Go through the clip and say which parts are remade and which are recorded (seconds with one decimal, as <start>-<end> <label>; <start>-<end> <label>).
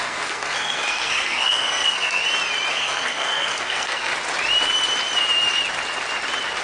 0.0-2.2 remade; 2.2-2.7 recorded; 2.7-4.1 remade; 4.1-6.6 recorded